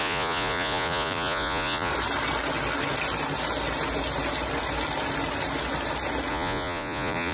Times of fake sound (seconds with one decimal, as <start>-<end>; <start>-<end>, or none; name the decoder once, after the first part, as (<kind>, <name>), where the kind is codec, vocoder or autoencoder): 0.0-1.9 (vocoder, Vocos); 6.3-7.3